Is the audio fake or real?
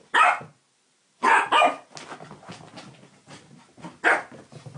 real